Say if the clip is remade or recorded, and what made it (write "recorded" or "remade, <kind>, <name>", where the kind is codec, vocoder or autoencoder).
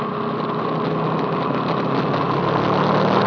recorded